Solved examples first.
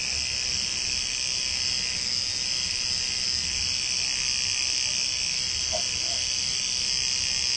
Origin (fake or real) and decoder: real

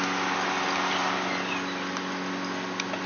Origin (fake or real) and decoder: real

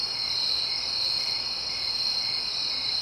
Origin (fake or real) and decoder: real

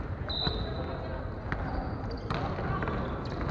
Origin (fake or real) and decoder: real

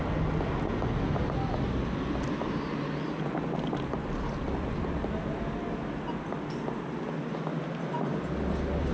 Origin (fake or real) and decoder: real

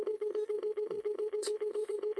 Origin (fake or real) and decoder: fake, vocoder, Vocos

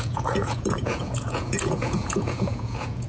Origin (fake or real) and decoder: fake, vocoder, Vocos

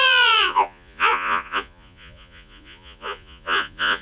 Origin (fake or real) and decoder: fake, vocoder, Vocos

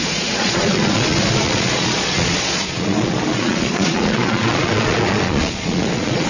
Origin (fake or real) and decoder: fake, vocoder, Vocos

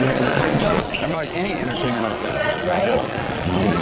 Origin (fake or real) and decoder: fake, vocoder, Vocos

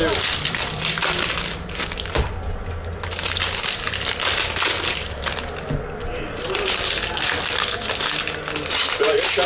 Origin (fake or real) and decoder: real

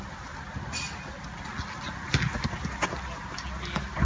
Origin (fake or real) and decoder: real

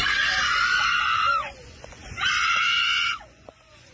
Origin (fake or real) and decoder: fake, vocoder, Vocos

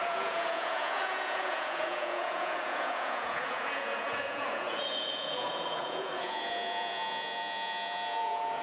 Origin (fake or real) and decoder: fake, vocoder, Vocos